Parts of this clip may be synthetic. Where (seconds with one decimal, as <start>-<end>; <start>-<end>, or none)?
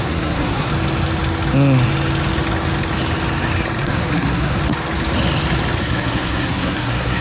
0.0-0.7; 3.8-4.6; 5.8-7.2